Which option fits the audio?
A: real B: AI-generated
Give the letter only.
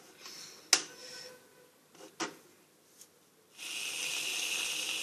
A